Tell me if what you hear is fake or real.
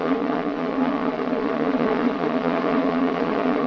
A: fake